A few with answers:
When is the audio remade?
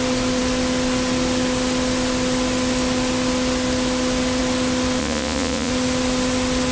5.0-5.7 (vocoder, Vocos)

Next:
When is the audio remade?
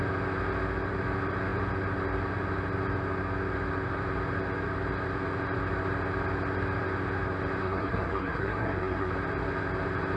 7.6-9.1 (codec, SNAC)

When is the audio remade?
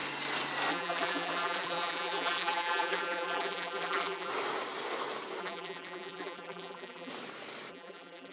0.7-4.3 (vocoder, BigVGAN v2); 5.4-7.1; 7.7-8.3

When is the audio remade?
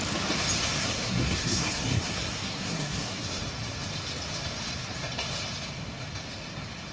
0.8-3.4 (codec, SNAC)